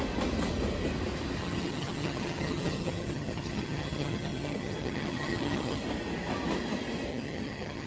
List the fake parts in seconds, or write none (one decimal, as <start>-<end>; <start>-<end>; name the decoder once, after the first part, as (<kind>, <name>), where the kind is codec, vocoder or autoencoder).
1.4-5.8 (vocoder, HiFi-GAN); 7.1-7.9